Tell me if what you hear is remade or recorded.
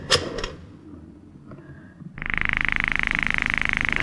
recorded